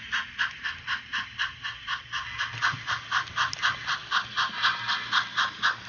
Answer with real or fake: real